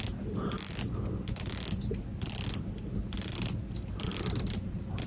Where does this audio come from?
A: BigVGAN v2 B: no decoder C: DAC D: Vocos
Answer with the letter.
B